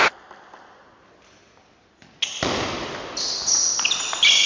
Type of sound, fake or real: real